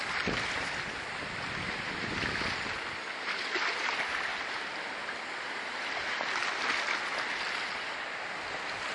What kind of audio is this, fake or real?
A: real